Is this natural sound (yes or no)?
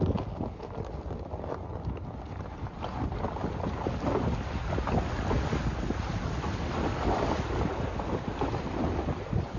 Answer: yes